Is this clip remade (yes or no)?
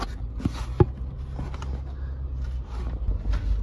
no